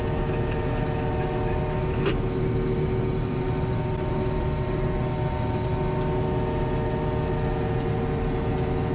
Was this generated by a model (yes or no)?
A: no